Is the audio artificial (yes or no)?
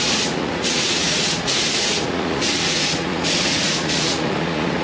yes